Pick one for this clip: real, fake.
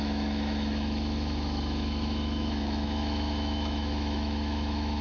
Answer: fake